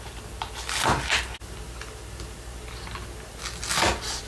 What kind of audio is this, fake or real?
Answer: real